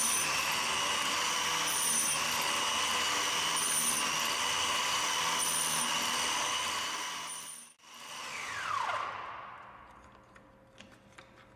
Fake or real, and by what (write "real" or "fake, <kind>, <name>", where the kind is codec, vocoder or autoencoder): real